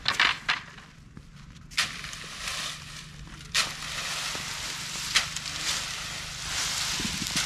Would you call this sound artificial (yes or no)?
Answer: no